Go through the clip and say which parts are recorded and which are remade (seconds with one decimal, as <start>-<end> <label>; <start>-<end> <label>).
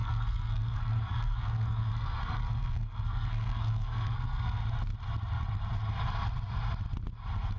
0.0-4.6 remade; 4.6-7.6 recorded